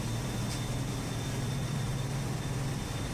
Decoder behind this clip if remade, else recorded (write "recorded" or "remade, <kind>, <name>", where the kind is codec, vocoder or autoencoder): recorded